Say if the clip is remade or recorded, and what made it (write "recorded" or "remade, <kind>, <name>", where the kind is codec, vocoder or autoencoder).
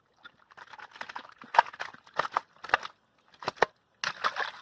recorded